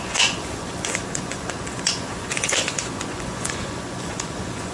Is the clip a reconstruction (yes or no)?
yes